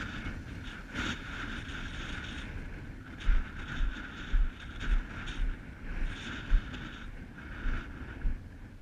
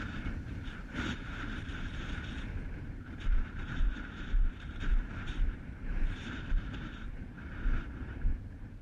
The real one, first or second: first